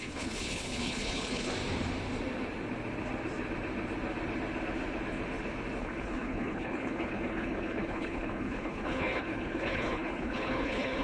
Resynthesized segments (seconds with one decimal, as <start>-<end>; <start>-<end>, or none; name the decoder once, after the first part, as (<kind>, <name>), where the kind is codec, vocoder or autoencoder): 0.0-1.5 (codec, HILCodec); 5.8-11.0